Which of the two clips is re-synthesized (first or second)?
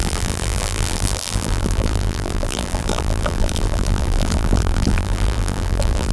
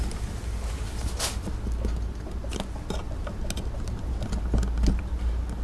first